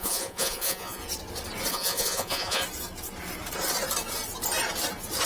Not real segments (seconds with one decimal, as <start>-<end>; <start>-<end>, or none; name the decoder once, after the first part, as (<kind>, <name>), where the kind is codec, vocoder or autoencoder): 0.0-1.0 (vocoder, Vocos); 1.7-2.6